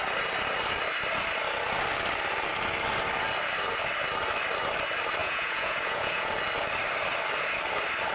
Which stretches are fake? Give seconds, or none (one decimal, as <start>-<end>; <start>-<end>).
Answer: 5.2-6.3